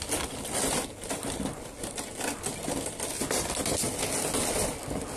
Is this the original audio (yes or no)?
yes